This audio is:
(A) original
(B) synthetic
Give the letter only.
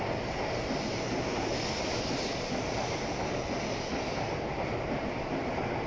B